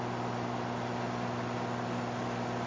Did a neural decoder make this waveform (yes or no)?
no